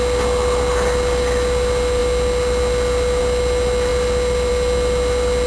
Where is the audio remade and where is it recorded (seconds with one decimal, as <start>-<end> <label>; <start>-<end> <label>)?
0.0-5.5 recorded